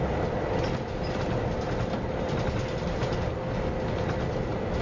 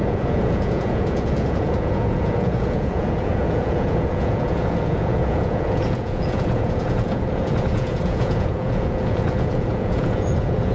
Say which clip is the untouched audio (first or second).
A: first